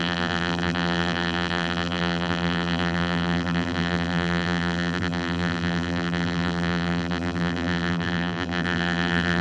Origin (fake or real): fake